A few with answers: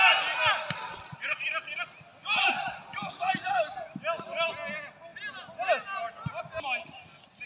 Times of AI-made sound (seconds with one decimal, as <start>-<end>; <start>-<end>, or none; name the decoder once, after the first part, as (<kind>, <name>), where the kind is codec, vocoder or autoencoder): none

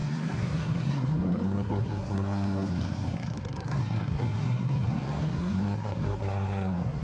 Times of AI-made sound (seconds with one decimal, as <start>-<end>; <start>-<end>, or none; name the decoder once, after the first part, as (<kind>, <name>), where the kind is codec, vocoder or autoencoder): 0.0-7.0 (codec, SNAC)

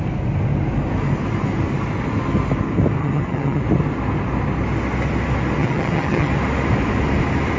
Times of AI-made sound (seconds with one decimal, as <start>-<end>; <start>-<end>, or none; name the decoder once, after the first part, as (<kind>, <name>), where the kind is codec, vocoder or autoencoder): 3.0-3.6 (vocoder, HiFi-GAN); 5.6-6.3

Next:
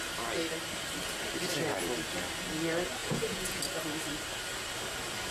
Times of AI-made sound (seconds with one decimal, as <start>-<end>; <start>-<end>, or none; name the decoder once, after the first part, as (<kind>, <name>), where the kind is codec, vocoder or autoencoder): 3.0-3.6 (vocoder, Vocos)

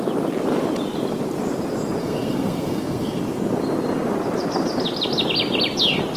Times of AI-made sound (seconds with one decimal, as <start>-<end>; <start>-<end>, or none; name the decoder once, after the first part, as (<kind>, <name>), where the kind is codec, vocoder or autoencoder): 2.0-3.2 (codec, SNAC)

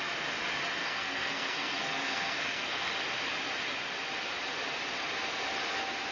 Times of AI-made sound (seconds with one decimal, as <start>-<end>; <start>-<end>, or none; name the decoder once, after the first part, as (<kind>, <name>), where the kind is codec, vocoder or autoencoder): 0.8-2.9 (codec, SNAC)

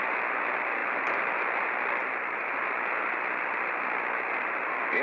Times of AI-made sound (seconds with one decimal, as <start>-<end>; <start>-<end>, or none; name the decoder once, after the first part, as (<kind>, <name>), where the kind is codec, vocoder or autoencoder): none